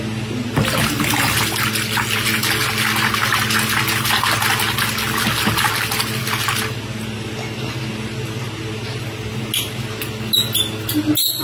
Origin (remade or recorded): recorded